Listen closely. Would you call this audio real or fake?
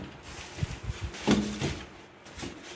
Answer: fake